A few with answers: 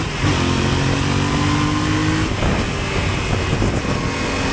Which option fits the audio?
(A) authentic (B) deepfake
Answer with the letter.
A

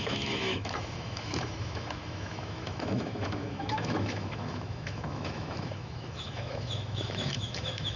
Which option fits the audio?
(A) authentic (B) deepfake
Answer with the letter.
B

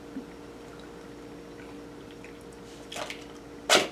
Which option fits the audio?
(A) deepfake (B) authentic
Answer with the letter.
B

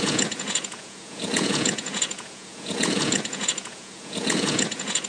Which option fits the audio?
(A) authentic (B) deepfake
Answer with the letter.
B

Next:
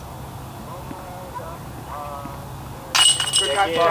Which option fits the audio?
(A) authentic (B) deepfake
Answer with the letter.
A